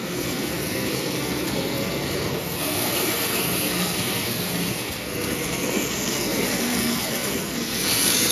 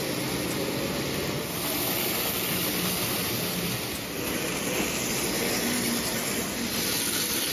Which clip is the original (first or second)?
second